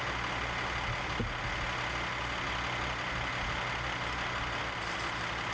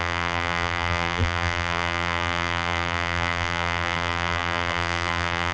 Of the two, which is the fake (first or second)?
second